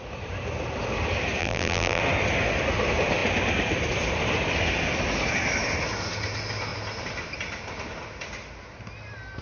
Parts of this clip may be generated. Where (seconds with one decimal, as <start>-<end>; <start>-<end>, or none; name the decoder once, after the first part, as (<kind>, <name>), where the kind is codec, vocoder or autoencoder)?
1.4-2.0 (vocoder, BigVGAN v2)